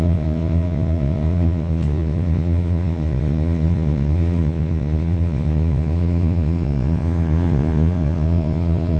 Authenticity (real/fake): fake